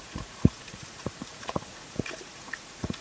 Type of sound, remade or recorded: remade